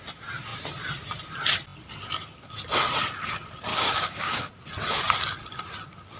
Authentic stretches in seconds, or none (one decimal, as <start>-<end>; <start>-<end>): 0.0-3.7; 4.5-6.2